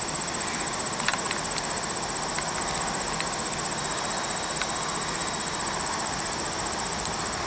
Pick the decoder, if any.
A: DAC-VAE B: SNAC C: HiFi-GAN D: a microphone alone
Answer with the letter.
D